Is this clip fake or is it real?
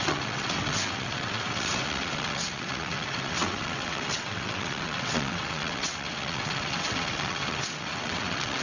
fake